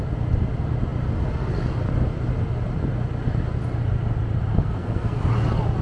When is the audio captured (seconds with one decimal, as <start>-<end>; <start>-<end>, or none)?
0.0-4.5; 5.2-5.8